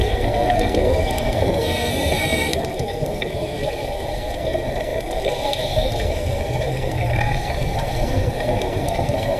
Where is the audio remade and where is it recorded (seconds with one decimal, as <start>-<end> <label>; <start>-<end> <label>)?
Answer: 0.0-9.4 remade